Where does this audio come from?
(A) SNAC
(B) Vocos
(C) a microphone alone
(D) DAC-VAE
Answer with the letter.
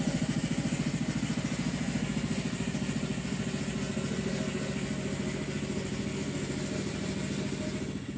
C